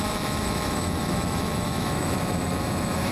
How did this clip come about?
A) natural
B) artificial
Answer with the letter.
B